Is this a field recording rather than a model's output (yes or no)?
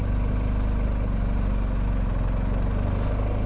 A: yes